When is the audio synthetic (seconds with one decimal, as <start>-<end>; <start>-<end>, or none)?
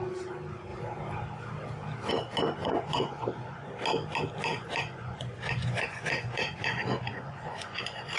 2.6-3.7; 4.5-8.2